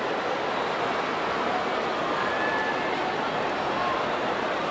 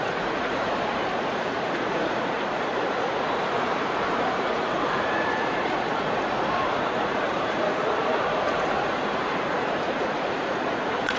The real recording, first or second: first